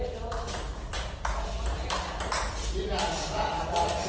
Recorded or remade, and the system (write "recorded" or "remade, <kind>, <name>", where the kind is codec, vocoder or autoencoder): remade, vocoder, BigVGAN v2